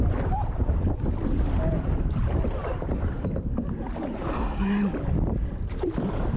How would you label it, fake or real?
real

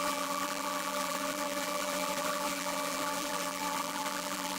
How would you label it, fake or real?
fake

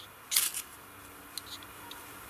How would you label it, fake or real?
real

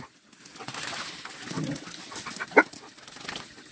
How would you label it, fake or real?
real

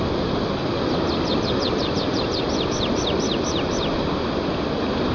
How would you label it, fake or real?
real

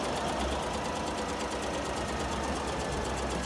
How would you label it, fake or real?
real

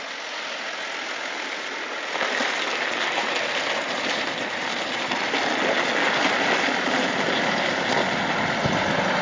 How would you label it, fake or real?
real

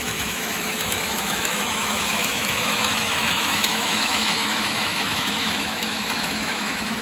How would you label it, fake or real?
fake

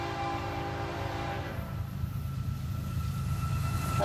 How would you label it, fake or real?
real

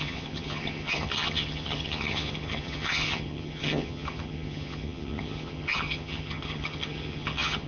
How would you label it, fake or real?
fake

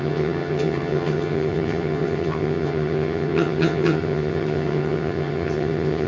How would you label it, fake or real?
fake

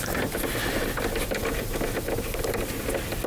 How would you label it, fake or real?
real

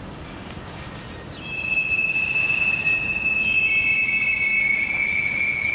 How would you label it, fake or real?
real